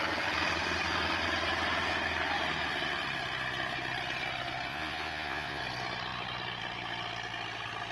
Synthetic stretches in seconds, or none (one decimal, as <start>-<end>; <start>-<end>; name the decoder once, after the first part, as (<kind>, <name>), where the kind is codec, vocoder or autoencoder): 4.7-5.6 (vocoder, Vocos)

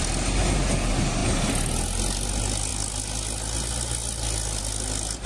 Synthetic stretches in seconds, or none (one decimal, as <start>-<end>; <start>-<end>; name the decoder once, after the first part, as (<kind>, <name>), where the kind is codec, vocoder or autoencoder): none

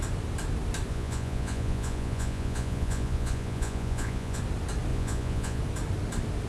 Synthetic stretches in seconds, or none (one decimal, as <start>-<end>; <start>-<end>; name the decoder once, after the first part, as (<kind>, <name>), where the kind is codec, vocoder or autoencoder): 0.9-4.4 (vocoder, Vocos); 4.9-5.6

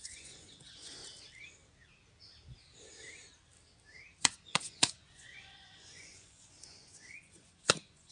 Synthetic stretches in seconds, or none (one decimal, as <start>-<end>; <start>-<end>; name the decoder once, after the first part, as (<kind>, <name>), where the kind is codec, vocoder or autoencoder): 0.0-1.0 (vocoder, Vocos); 4.2-8.1

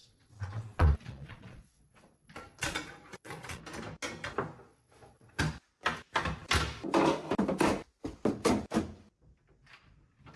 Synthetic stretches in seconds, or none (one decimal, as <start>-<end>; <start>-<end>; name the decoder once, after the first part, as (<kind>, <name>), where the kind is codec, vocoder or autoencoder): 0.0-3.6 (vocoder, Vocos); 4.7-5.4